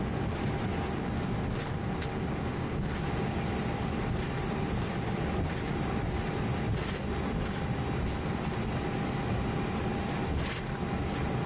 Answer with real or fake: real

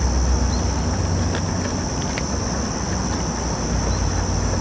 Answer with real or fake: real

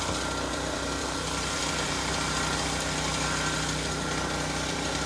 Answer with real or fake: fake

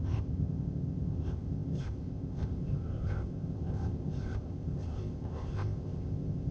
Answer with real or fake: fake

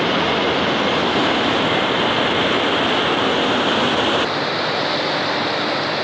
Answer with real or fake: real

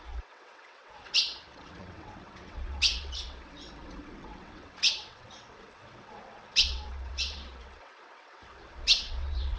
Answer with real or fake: fake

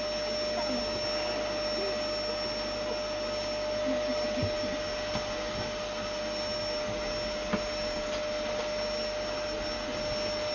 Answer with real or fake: real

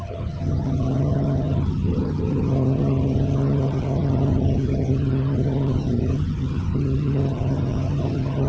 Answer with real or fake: fake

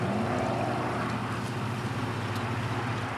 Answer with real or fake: real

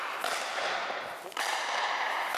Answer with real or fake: fake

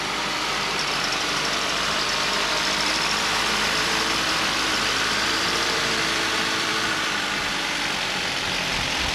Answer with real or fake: fake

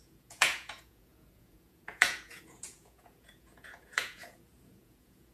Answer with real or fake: fake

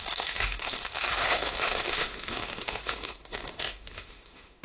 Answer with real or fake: fake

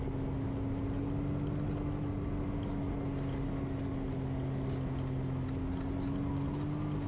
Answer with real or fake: real